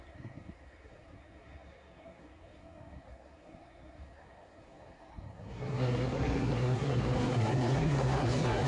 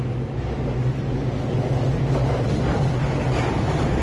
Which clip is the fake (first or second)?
first